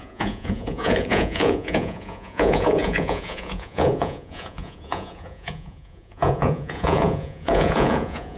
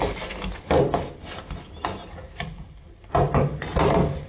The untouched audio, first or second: second